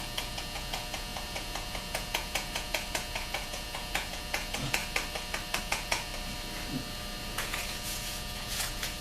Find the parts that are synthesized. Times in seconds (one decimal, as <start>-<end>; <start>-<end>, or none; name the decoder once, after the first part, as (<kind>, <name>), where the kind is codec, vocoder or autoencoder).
0.0-4.8 (vocoder, Vocos); 5.6-6.1; 7.2-9.0